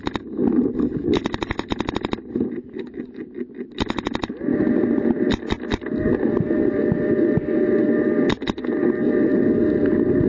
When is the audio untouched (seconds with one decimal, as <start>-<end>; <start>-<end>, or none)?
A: 0.0-10.3